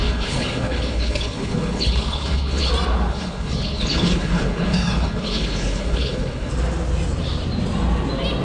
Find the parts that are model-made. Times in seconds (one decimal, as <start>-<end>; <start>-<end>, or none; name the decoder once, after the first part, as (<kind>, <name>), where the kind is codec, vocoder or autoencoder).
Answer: 0.0-2.7 (codec, HILCodec); 3.1-6.5

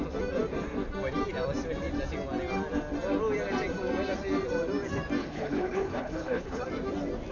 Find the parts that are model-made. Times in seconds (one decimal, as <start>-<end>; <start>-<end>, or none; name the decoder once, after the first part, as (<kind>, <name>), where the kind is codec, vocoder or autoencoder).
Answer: 5.2-6.6 (codec, HILCodec)

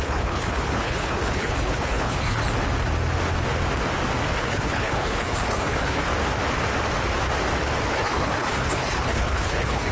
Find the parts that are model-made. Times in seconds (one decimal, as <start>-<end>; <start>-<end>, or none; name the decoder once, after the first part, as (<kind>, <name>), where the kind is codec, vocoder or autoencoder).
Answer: 0.0-2.4 (codec, HILCodec); 4.3-6.1; 7.9-9.9

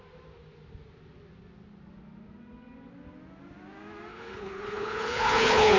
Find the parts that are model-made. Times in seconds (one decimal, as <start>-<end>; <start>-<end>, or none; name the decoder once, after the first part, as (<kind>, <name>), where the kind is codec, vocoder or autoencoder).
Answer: 4.1-5.8 (codec, HILCodec)

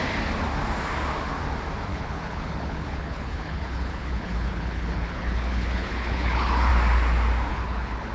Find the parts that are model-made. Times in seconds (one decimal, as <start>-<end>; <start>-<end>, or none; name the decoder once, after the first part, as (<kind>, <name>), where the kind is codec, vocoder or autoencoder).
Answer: 1.9-6.7 (codec, HILCodec); 7.5-8.1

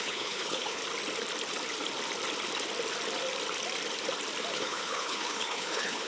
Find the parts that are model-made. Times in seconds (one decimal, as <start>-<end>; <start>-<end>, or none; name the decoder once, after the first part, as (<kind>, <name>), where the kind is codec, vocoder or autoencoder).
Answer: 0.0-0.8 (codec, HILCodec); 4.5-6.1